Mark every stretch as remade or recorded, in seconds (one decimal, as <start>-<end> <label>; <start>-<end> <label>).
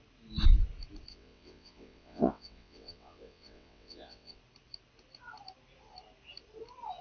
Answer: 0.0-1.1 recorded; 1.1-4.4 remade; 4.4-7.0 recorded